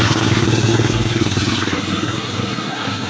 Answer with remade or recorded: remade